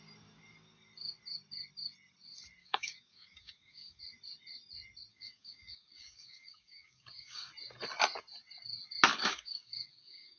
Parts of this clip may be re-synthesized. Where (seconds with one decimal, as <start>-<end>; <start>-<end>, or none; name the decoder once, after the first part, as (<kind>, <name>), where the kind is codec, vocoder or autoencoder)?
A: 2.6-4.0 (codec, DAC); 5.1-7.5; 9.1-10.4